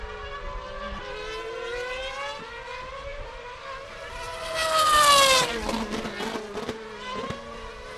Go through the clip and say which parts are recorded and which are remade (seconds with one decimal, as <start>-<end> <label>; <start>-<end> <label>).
0.0-3.1 recorded; 3.1-3.6 remade; 3.6-8.0 recorded